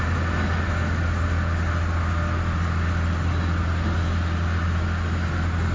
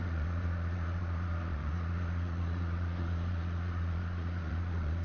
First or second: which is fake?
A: second